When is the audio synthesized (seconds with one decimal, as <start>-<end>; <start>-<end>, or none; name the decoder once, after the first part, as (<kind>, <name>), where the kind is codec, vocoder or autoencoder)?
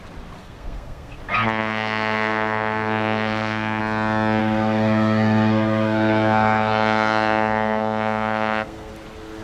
0.4-1.2 (codec, SNAC); 1.6-3.8; 4.4-8.9